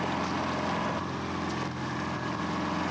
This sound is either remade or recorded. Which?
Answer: recorded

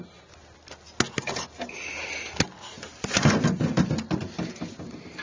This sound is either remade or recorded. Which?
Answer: recorded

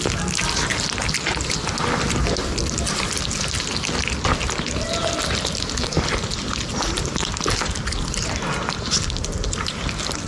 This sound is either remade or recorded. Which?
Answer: recorded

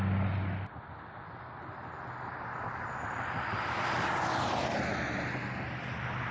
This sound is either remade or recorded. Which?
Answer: recorded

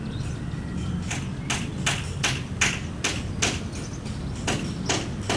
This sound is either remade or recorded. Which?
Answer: recorded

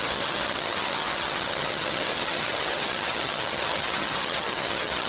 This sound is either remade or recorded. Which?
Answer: remade